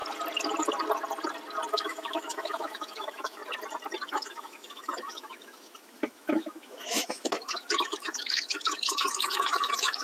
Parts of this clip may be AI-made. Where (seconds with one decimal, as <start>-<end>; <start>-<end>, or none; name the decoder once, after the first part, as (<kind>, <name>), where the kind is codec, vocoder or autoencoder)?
1.7-3.4 (autoencoder, DAC-VAE); 4.1-10.0